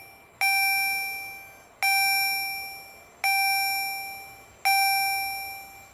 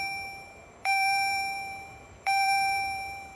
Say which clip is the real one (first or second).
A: first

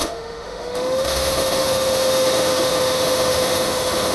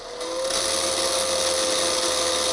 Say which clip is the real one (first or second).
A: second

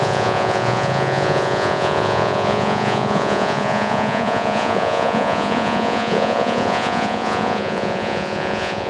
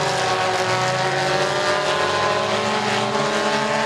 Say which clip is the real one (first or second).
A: second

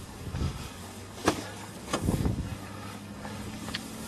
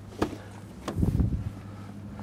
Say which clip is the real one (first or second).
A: second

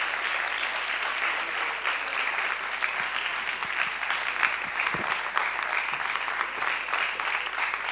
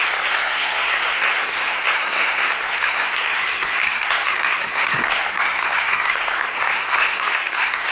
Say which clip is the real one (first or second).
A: first